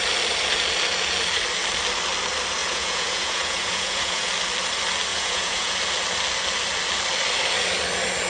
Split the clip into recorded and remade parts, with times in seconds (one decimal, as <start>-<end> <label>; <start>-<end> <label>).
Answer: 0.0-2.6 recorded; 2.6-4.3 remade; 4.3-5.1 recorded; 5.1-5.7 remade; 5.7-8.3 recorded